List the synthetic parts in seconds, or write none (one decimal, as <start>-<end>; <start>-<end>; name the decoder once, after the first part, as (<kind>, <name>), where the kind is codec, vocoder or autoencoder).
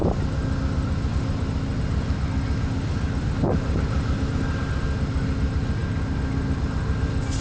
none